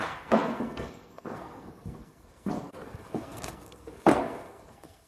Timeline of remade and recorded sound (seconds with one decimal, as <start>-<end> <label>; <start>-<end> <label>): 0.0-5.1 remade